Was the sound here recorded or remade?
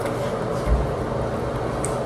recorded